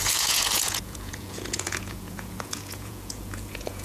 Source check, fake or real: fake